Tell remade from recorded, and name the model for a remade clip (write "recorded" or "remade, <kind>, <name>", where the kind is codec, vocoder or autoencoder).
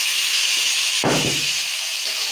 remade, autoencoder, DAC-VAE